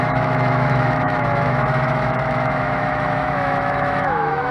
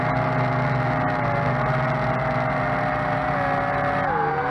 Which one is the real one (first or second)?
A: second